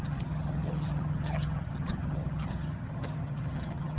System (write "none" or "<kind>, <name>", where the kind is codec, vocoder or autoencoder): vocoder, HiFi-GAN